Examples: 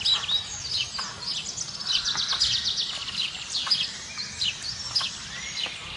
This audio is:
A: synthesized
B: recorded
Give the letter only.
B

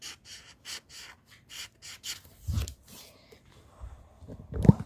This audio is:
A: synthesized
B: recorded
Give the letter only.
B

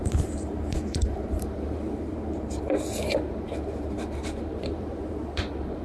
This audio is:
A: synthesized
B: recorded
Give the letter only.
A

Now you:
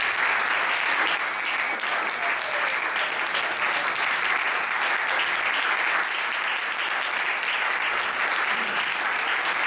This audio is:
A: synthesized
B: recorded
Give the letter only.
B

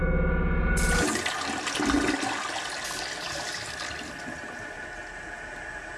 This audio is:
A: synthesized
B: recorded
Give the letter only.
B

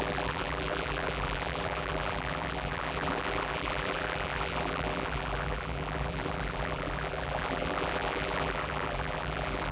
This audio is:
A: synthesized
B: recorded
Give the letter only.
A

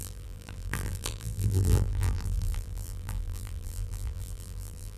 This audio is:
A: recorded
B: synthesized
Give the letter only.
B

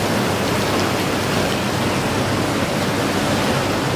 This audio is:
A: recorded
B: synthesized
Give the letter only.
A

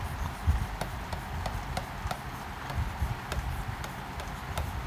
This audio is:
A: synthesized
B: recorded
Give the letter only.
B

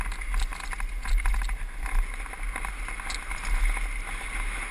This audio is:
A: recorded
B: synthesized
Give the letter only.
A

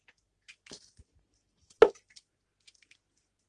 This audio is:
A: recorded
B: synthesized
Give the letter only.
A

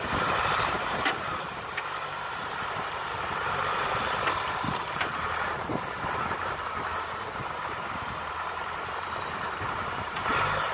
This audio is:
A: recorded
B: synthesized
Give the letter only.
B